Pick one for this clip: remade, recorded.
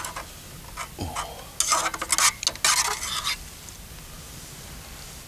recorded